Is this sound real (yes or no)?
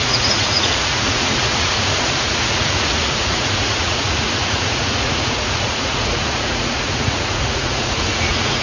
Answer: no